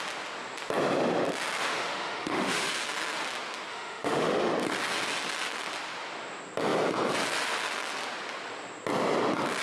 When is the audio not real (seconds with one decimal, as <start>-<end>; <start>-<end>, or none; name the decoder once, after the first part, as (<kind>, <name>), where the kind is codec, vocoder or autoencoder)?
1.6-2.7 (autoencoder, DAC-VAE); 3.7-4.5